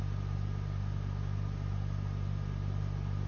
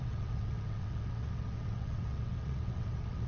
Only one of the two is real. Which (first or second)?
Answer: first